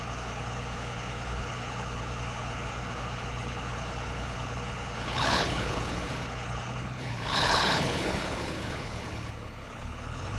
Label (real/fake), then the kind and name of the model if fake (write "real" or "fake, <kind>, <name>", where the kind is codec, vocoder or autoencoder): fake, codec, HILCodec